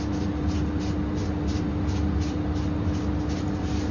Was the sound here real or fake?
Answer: real